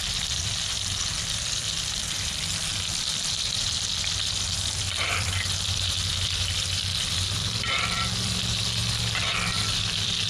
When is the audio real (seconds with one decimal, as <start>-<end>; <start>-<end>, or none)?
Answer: 8.8-9.5